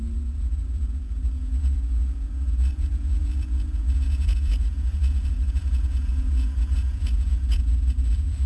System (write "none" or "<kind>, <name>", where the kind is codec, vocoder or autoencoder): vocoder, Vocos